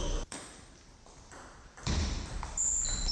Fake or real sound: fake